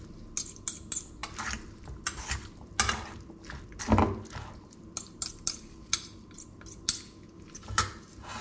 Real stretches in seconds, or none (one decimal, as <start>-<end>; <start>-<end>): 0.0-8.4